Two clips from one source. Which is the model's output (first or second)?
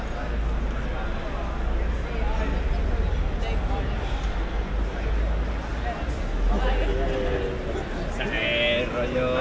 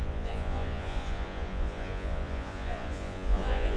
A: second